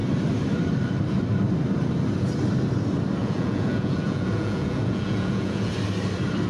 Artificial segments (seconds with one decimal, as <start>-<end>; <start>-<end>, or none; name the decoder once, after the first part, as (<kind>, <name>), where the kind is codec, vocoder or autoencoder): 3.2-5.7 (vocoder, Vocos)